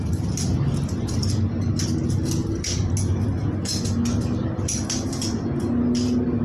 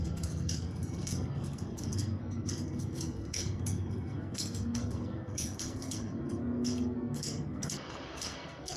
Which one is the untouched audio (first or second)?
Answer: first